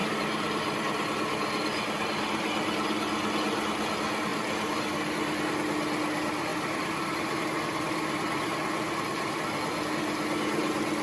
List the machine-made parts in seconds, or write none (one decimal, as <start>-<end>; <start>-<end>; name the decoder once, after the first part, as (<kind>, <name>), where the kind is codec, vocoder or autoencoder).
0.0-0.9 (vocoder, BigVGAN v2); 4.3-5.5; 6.5-9.9